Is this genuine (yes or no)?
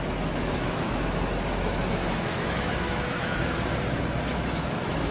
no